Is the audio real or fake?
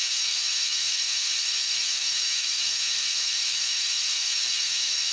fake